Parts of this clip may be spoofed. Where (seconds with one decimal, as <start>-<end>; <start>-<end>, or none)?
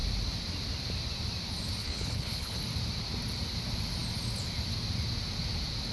1.8-2.6